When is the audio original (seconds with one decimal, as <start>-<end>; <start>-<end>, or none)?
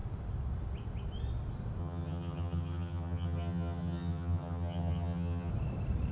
0.0-1.8; 5.5-6.1